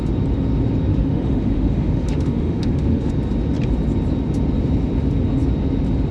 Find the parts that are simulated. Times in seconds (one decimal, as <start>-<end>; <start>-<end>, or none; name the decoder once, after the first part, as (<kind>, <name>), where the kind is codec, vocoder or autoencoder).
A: 0.9-3.1 (autoencoder, DAC-VAE)